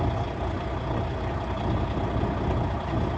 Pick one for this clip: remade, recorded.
recorded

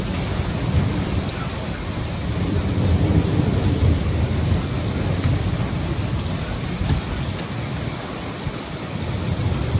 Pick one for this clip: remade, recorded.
recorded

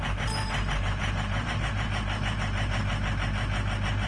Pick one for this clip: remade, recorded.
recorded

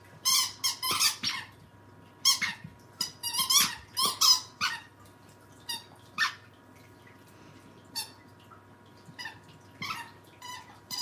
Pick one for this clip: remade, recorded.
recorded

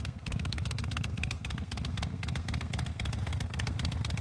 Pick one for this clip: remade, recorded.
remade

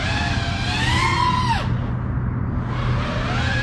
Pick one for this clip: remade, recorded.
recorded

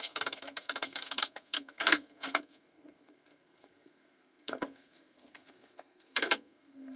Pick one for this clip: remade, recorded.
remade